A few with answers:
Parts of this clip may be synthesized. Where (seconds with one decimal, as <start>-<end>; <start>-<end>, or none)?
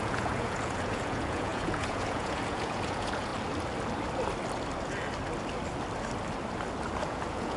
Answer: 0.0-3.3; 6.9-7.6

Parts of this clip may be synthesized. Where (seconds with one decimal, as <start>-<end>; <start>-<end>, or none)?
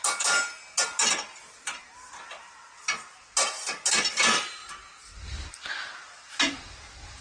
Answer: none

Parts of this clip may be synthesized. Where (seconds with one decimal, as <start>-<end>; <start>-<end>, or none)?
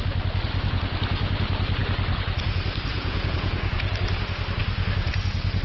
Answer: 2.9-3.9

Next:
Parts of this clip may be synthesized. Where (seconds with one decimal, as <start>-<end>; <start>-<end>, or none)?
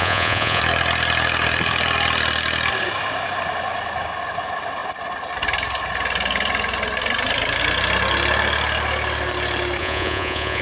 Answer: 0.0-0.6; 9.8-10.6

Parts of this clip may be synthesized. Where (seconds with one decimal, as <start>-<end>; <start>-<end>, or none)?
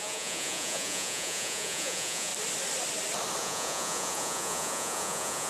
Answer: 0.0-2.3; 3.4-5.5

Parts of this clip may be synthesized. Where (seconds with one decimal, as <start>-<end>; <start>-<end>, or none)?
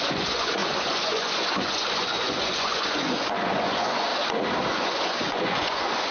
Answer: 0.0-4.1; 4.7-6.1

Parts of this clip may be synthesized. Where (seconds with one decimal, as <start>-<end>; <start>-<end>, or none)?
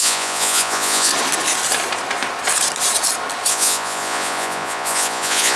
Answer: 0.0-1.1; 3.5-5.6